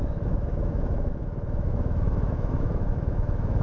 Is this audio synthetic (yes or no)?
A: yes